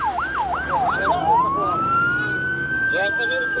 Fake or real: real